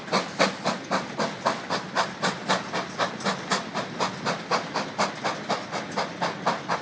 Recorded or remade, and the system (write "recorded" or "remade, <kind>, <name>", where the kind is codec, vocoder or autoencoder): recorded